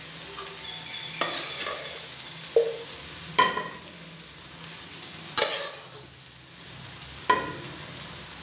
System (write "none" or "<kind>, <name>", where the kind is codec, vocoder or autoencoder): none